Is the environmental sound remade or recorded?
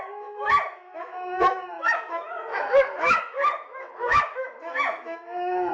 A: remade